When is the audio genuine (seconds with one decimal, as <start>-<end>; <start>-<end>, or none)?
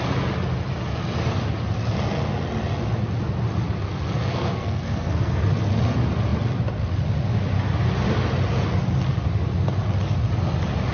0.0-4.3; 5.4-10.9